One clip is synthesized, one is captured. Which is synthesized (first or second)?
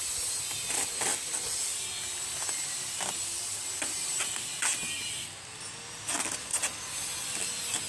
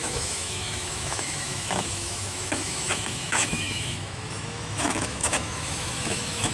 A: second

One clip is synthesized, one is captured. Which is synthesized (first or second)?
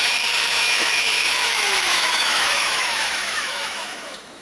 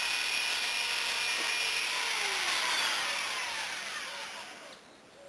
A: first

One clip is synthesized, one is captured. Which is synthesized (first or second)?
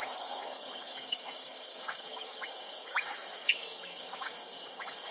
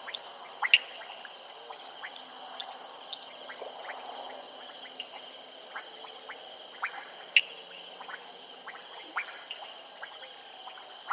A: first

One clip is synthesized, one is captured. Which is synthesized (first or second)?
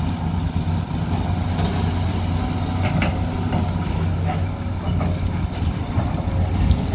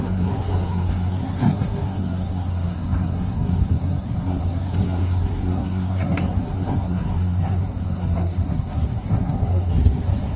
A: second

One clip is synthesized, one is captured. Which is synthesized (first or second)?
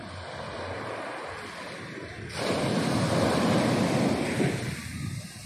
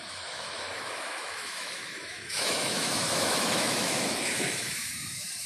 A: second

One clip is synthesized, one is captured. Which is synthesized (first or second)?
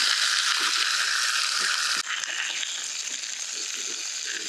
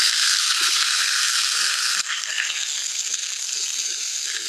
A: second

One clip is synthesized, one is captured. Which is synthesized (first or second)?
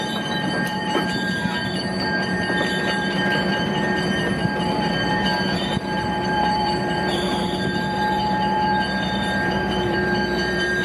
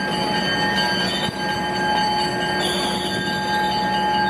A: first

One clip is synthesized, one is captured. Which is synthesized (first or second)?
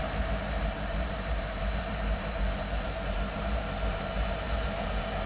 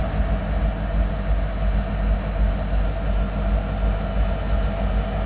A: first